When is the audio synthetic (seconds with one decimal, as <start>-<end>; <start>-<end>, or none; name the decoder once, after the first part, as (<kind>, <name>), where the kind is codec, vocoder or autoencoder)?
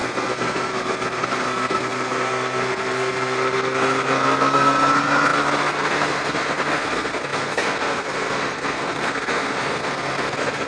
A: 0.0-10.7 (codec, SNAC)